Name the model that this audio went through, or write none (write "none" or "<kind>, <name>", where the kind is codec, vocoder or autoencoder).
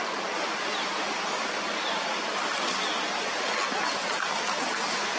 none